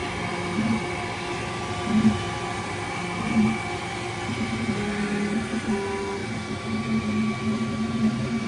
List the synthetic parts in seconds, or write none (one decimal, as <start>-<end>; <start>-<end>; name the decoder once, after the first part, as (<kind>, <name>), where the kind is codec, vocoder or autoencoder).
none